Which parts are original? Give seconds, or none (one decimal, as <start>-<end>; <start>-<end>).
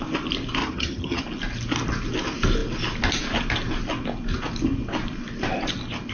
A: 0.0-0.6; 1.2-6.1